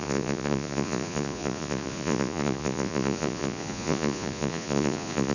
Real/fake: fake